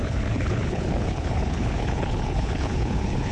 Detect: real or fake fake